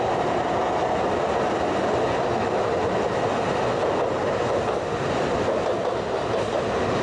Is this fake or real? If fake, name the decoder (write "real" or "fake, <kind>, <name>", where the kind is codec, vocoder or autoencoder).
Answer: real